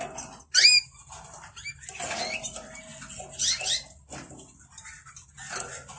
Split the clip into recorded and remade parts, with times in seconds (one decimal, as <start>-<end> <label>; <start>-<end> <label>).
0.0-6.0 recorded